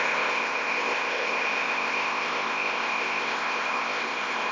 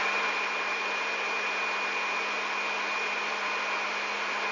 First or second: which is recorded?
second